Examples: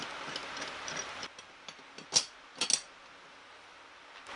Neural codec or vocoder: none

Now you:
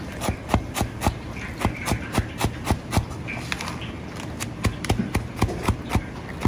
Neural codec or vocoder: none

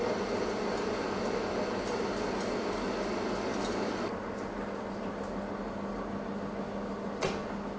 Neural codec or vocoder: none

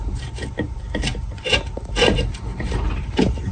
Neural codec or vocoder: vocoder, BigVGAN v2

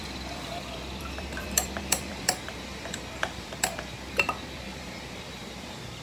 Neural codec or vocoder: vocoder, BigVGAN v2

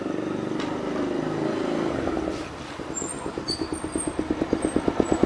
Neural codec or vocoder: none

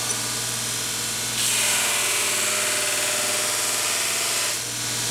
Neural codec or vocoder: none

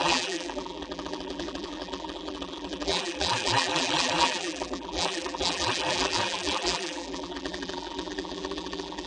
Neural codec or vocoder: vocoder, BigVGAN v2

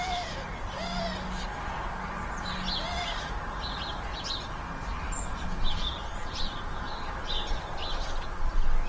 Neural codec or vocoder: none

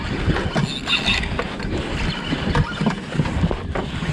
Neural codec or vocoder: none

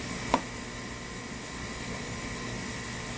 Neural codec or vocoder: none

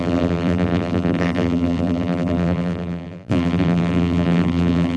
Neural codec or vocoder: vocoder, BigVGAN v2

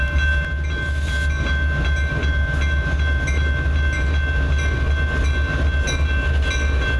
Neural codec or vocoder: none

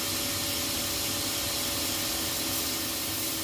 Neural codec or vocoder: none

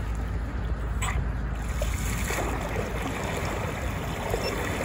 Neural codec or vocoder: none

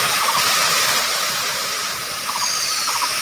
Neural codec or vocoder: vocoder, BigVGAN v2